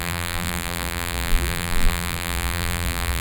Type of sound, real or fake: fake